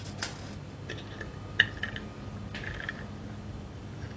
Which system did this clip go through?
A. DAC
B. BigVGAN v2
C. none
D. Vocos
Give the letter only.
C